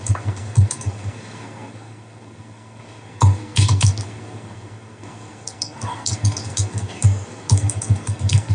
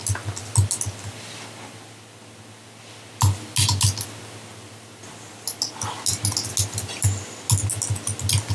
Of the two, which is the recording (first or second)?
second